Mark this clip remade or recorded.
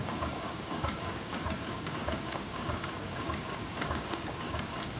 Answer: remade